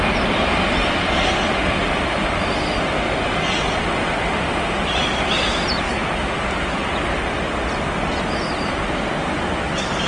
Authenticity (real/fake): real